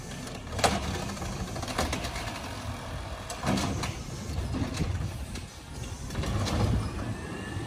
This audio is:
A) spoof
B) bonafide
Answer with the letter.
B